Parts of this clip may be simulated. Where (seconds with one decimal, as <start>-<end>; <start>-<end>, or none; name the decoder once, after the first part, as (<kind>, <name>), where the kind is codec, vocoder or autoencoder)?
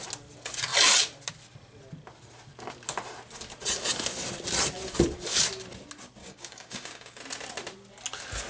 6.2-7.2 (codec, DAC)